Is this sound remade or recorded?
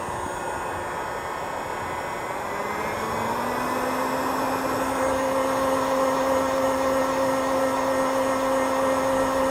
recorded